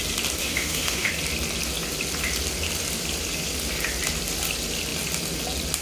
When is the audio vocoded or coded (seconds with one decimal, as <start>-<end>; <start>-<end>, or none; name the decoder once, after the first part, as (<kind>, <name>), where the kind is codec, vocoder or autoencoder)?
0.4-1.1 (autoencoder, DAC-VAE)